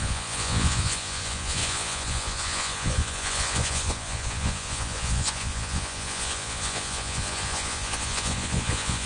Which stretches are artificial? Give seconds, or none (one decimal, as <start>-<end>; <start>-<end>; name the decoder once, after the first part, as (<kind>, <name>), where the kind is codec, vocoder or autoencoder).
0.0-9.1 (vocoder, Vocos)